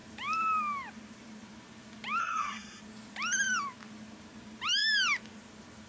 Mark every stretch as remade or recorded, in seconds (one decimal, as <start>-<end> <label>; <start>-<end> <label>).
0.0-2.2 recorded; 2.2-2.8 remade; 2.8-5.9 recorded